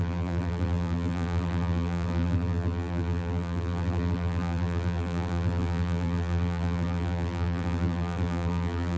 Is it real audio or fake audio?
fake